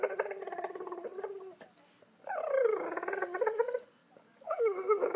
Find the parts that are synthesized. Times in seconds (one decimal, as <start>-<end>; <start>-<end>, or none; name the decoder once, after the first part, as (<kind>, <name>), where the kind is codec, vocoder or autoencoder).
4.0-5.2 (codec, DAC)